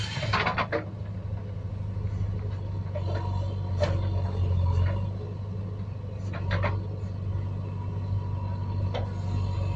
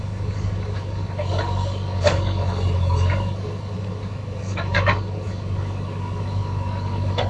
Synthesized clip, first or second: second